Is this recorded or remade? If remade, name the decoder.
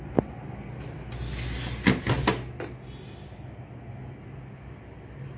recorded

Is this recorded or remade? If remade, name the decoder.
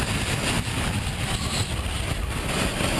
recorded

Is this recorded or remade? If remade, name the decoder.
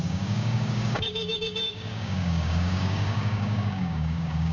remade, codec, DAC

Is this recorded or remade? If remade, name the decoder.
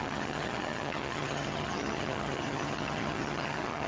remade, vocoder, HiFi-GAN